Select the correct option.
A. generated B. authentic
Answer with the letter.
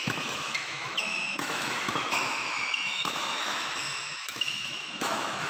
A